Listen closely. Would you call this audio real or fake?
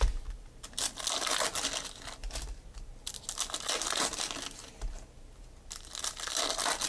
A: real